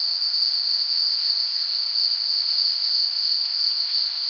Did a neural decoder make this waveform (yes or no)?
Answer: yes